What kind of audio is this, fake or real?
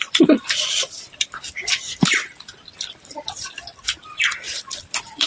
fake